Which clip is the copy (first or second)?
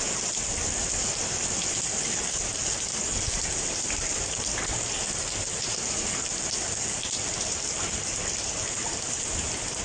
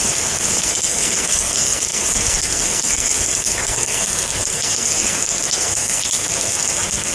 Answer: second